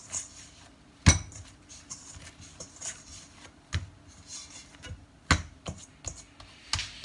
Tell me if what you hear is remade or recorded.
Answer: recorded